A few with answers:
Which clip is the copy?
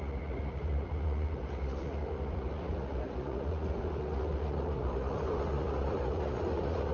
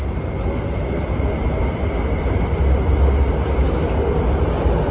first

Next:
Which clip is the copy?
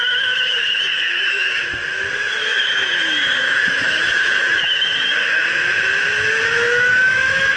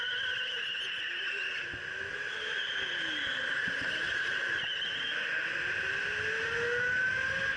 first